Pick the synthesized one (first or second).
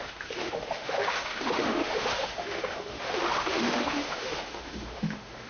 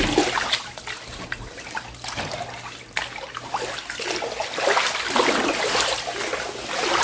first